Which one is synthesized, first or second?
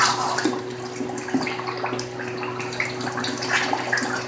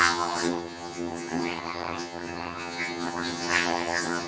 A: second